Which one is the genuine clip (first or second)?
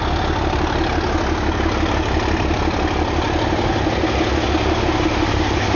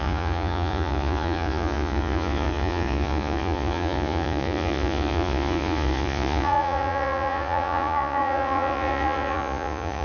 first